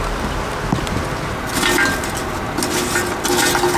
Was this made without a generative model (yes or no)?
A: yes